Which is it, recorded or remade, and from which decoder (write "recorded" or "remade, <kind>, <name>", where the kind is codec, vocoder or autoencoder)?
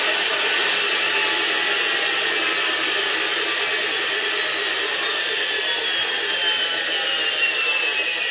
recorded